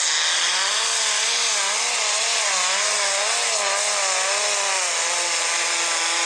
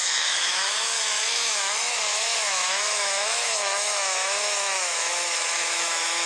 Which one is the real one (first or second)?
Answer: first